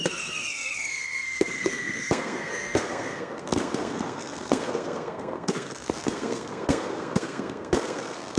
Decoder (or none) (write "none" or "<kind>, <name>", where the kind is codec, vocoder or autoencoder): codec, SNAC